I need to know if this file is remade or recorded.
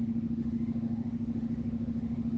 remade